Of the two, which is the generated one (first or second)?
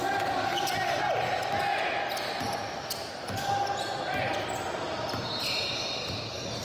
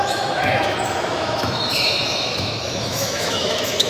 second